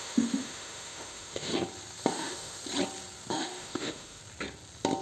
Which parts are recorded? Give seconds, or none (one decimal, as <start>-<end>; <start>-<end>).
1.5-2.1; 2.6-3.3; 4.2-5.0